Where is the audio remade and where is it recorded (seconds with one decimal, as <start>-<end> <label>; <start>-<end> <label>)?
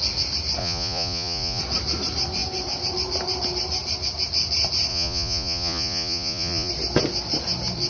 0.0-0.6 recorded; 0.6-1.6 remade; 1.6-4.9 recorded; 4.9-6.7 remade; 6.7-7.9 recorded